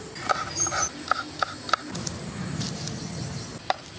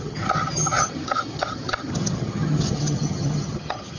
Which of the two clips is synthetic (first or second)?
second